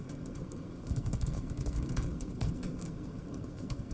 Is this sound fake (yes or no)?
yes